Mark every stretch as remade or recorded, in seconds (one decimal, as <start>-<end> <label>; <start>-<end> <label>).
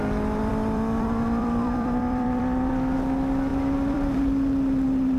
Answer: 0.0-0.5 recorded; 0.5-2.7 remade; 2.7-3.5 recorded; 3.5-4.1 remade; 4.1-5.2 recorded